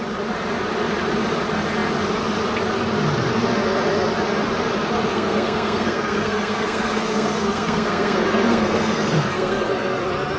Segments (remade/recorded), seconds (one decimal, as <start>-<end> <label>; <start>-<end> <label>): 0.0-5.1 recorded; 5.1-10.0 remade; 10.0-10.4 recorded